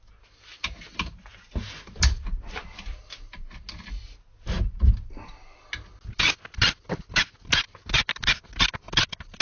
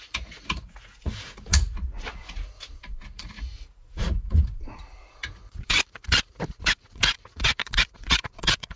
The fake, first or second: second